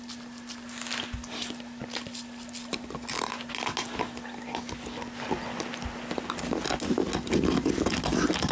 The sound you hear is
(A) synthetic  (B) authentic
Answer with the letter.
B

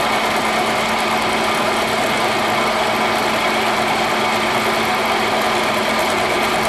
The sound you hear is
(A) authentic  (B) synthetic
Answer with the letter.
A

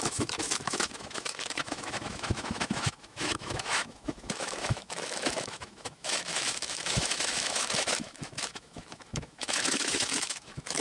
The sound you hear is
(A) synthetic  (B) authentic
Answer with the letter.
A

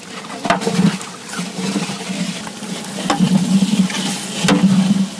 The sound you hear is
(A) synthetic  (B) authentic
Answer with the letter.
B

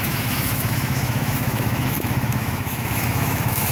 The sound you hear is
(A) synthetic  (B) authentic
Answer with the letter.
A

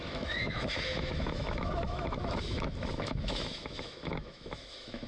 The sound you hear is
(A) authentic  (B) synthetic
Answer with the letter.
B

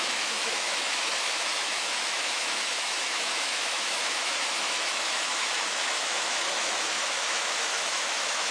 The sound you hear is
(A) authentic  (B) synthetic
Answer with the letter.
B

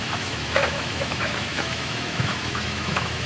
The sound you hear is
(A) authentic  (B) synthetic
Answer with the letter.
B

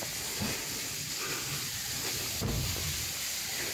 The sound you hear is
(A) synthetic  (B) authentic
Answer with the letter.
B